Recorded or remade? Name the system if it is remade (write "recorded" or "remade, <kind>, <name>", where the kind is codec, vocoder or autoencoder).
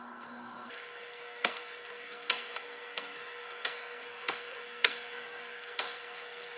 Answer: remade, codec, SNAC